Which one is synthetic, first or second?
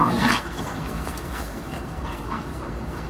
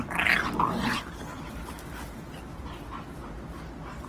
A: first